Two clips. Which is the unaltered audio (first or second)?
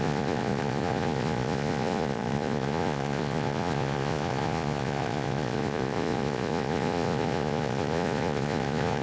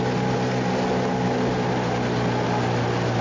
second